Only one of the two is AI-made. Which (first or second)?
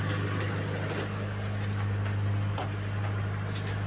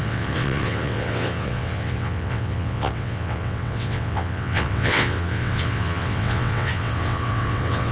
second